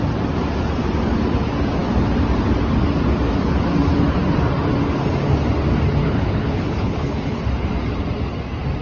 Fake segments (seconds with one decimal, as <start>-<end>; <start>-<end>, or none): 6.0-7.4

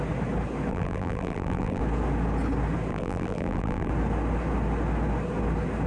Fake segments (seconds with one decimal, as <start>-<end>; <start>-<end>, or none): 0.7-1.8; 2.9-3.9